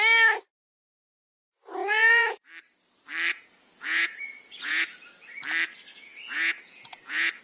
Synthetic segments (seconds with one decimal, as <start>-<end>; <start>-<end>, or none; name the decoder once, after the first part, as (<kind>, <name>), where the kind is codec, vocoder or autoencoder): 1.8-2.5 (vocoder, Vocos); 3.3-5.4; 5.9-7.4